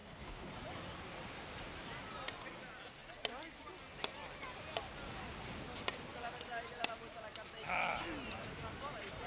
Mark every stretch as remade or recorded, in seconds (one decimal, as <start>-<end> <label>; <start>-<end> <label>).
0.0-0.5 remade; 0.5-9.3 recorded